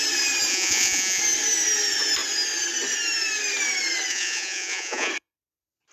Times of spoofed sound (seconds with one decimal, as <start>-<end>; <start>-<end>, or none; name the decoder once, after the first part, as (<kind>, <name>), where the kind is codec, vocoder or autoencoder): 0.5-1.2 (vocoder, Vocos); 4.1-5.1